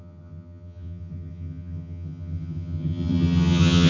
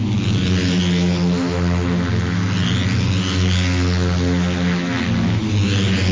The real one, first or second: second